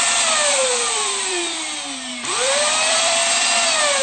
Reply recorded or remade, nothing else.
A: remade